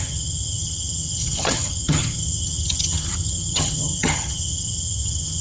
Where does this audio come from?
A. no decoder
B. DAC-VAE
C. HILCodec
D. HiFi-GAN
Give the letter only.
D